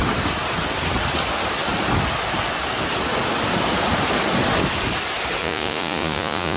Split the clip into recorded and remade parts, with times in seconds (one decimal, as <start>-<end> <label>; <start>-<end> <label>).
0.0-5.4 recorded; 5.4-6.6 remade